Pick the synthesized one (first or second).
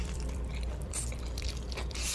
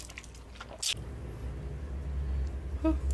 first